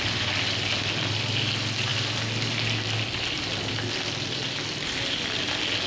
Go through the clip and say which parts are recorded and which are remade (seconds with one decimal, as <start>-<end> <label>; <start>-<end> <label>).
0.0-5.9 recorded